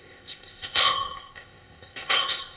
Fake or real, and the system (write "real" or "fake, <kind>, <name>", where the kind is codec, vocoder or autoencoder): fake, codec, ZipCodec